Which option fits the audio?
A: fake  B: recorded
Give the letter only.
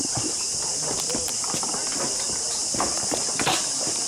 B